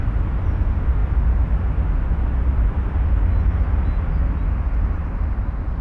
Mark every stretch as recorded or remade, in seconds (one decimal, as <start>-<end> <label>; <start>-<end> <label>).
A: 0.0-5.8 recorded